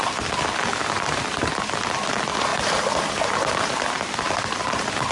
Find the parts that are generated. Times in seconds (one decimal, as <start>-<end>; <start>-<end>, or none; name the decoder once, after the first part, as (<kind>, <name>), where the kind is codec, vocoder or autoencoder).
0.8-5.1 (vocoder, BigVGAN v2)